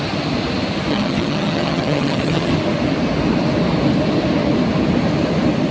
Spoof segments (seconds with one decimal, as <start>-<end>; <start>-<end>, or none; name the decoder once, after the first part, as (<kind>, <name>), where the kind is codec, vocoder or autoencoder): 0.9-2.5 (vocoder, HiFi-GAN)